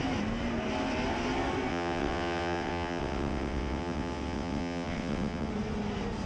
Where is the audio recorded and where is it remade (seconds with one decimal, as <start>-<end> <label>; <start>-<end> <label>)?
0.0-1.7 recorded; 1.7-5.5 remade; 5.5-6.3 recorded